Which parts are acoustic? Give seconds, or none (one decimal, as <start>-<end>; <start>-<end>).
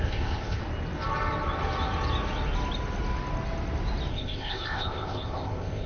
0.6-4.1